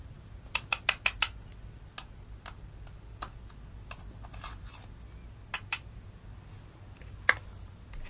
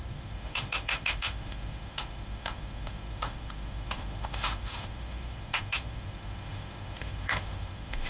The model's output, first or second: second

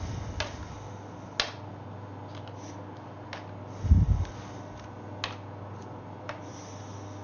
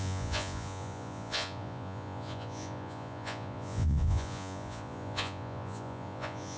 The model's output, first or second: second